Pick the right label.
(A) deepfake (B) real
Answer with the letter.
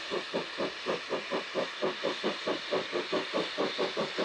B